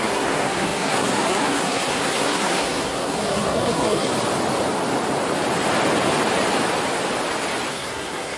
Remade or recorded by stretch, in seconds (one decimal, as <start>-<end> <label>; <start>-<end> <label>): 0.0-4.1 remade; 4.1-7.7 recorded; 7.7-8.4 remade